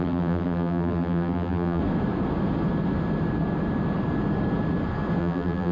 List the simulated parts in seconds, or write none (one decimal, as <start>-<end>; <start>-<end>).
0.0-1.8; 5.2-5.7